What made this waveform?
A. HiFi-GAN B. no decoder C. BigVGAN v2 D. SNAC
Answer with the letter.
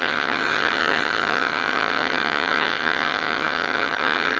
A